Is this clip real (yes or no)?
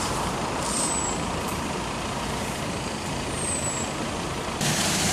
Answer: no